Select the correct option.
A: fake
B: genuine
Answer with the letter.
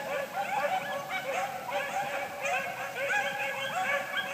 B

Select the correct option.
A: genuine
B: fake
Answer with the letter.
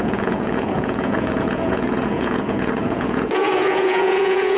B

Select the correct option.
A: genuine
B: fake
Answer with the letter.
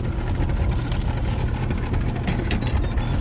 A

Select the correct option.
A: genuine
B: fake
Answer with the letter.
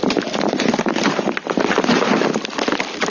A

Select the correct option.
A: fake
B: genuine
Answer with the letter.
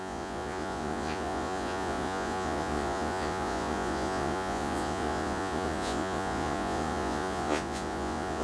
A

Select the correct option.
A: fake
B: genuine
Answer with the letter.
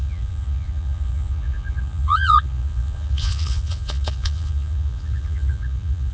A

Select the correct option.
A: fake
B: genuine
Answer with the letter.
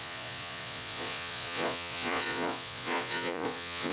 A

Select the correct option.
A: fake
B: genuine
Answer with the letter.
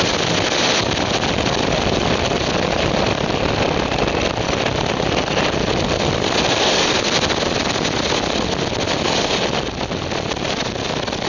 B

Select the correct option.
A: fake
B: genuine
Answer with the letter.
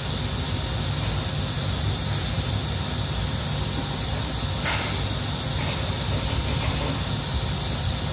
B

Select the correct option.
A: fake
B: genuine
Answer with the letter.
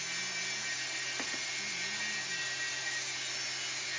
B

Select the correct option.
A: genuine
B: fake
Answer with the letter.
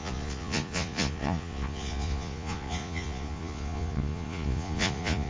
B